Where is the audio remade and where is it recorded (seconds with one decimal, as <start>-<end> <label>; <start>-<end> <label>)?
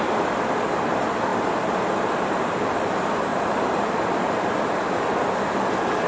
0.0-3.3 recorded; 3.3-5.1 remade; 5.1-6.1 recorded